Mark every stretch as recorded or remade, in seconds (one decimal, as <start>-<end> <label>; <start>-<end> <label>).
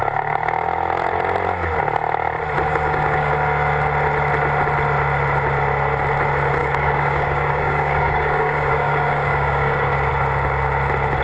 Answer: 0.0-2.7 recorded; 2.7-3.3 remade; 3.3-6.6 recorded; 6.6-10.1 remade; 10.1-11.2 recorded